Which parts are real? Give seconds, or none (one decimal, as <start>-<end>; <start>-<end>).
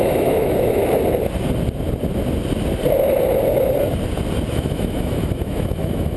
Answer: 0.8-4.5